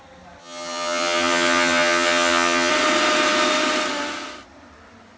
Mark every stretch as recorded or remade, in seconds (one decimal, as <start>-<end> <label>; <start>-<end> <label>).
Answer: 0.0-0.4 recorded; 0.4-2.7 remade; 2.7-5.2 recorded